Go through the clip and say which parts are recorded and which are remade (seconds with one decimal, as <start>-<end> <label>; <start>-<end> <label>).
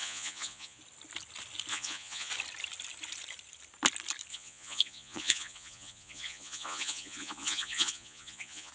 0.0-0.8 remade; 0.8-1.7 recorded; 1.7-2.3 remade; 2.3-4.3 recorded; 4.3-8.7 remade